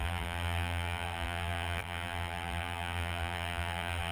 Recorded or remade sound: remade